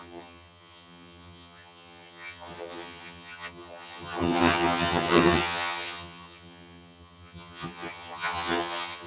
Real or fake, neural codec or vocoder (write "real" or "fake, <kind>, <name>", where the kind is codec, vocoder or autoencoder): fake, vocoder, HiFi-GAN